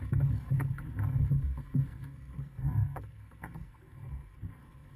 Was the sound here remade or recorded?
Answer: remade